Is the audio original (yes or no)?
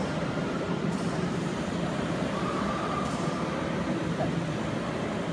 no